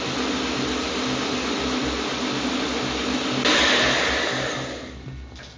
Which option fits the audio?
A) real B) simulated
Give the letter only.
A